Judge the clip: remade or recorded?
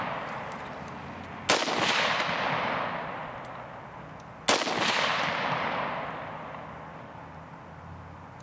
recorded